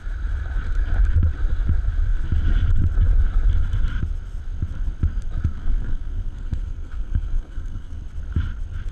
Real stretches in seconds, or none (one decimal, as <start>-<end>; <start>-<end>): 0.0-5.5; 8.0-8.9